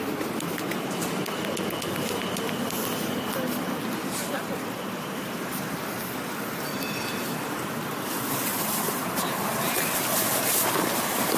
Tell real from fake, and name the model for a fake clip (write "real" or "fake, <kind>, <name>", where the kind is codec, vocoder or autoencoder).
real